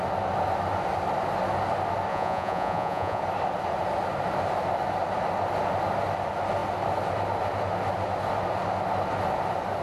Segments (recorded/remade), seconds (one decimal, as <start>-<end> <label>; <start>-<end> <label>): 0.0-2.1 recorded; 2.1-3.2 remade; 3.2-9.8 recorded